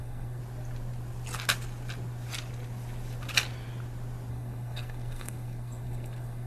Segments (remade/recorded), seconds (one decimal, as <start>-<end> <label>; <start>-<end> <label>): 0.0-0.4 remade; 0.4-4.3 recorded; 4.3-6.5 remade